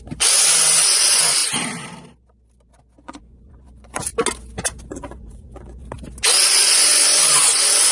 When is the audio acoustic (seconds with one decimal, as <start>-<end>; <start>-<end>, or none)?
1.4-3.0; 4.1-4.8; 5.8-6.5